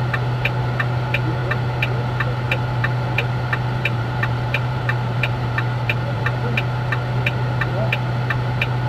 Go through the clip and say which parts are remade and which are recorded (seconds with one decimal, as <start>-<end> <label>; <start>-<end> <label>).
0.0-3.8 recorded; 3.8-6.2 remade; 6.2-8.9 recorded